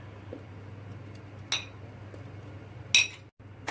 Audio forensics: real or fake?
real